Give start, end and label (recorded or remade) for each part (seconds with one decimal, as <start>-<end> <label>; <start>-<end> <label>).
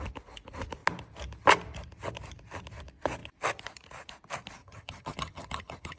0.0-4.6 recorded; 4.6-6.0 remade